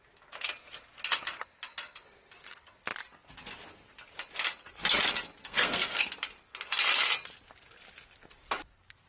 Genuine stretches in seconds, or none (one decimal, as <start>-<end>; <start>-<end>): 0.0-5.4; 6.1-9.1